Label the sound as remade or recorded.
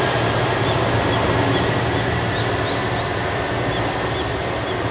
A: recorded